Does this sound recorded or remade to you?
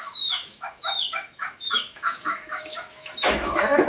remade